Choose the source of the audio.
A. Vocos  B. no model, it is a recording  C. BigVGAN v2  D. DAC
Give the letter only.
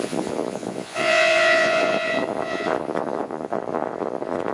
A